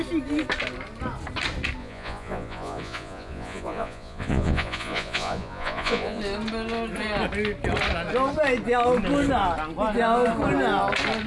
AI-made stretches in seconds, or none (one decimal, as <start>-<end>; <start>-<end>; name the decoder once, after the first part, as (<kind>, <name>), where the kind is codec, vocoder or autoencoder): 1.8-6.2 (vocoder, Vocos)

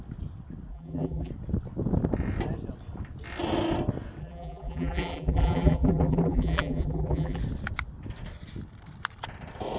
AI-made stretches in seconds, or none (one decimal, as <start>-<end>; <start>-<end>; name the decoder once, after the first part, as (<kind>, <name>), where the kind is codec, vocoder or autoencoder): 0.7-1.3 (vocoder, BigVGAN v2); 4.2-7.4

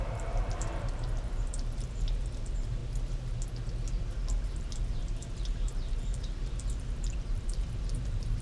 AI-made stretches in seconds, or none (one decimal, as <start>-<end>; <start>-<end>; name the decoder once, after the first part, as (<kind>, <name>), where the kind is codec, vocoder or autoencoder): 0.0-2.8 (vocoder, BigVGAN v2); 4.0-8.4

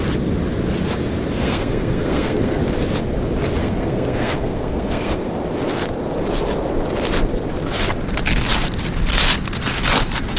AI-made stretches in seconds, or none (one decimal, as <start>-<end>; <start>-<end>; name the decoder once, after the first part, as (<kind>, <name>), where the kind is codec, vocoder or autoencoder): 1.4-2.6 (codec, SNAC); 3.6-5.3

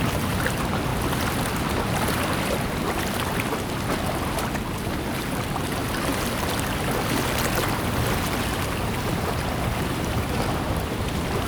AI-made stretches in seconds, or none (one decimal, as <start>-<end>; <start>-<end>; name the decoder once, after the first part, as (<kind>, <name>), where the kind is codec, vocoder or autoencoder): 0.0-0.9 (vocoder, BigVGAN v2); 5.2-5.8; 9.6-11.5

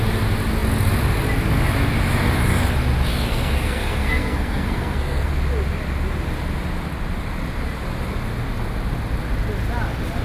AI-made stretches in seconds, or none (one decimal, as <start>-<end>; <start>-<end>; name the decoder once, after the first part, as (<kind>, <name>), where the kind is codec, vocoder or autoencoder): 3.1-5.3 (codec, SNAC)